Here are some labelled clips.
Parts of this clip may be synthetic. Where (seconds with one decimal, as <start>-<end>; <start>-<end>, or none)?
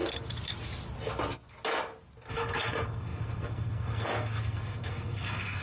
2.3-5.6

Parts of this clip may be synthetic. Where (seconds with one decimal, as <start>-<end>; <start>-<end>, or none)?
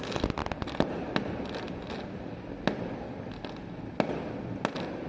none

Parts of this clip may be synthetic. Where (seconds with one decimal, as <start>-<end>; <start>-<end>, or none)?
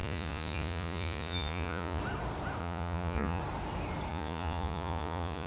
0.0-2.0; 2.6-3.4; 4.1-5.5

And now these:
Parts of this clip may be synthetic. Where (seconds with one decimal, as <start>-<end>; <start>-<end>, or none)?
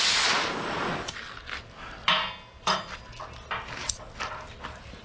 none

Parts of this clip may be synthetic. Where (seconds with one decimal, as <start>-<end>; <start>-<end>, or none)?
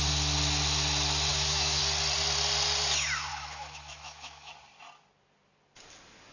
1.3-1.8; 3.3-4.5